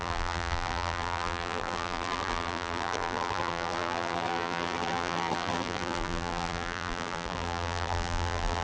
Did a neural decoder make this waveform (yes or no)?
yes